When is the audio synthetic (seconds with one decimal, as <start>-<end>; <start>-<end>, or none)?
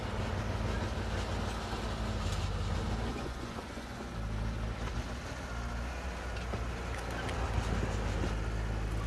3.1-4.1